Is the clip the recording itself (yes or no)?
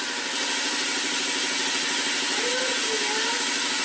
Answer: yes